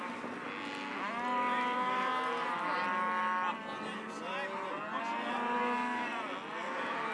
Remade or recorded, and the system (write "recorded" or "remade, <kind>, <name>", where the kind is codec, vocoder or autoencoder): recorded